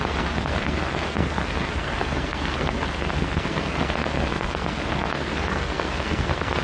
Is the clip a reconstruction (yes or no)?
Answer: yes